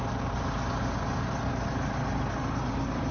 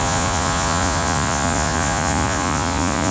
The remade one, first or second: second